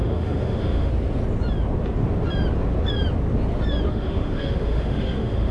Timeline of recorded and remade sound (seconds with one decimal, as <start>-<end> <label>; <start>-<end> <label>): 0.0-0.9 remade; 0.9-3.9 recorded; 3.9-5.5 remade